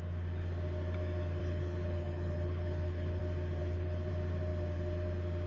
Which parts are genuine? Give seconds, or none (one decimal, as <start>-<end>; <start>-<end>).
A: 0.0-1.4; 3.2-3.6; 4.1-5.5